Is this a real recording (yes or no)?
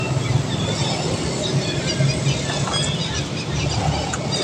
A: yes